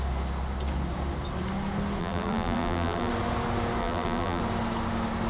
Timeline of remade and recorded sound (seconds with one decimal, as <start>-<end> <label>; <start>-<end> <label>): 0.0-2.0 recorded; 2.0-3.1 remade; 3.1-3.8 recorded; 3.8-4.4 remade; 4.4-5.3 recorded